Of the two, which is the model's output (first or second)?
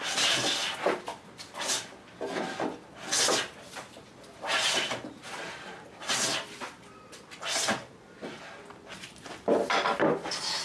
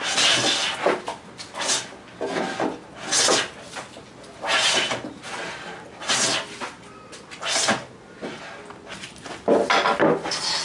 first